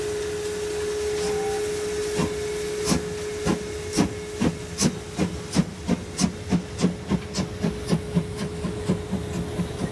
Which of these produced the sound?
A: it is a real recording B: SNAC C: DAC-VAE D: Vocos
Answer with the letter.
A